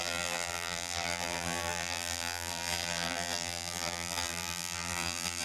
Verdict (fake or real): fake